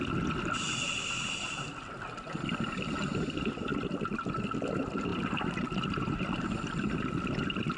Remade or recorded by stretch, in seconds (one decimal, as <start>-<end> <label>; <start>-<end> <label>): 0.0-7.8 recorded